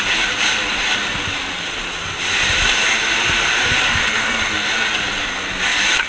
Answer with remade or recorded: recorded